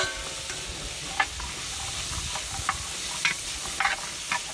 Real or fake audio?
real